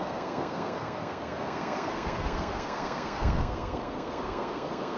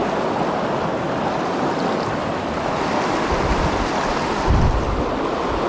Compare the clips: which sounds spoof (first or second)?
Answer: first